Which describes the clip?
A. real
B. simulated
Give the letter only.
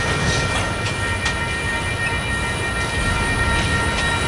A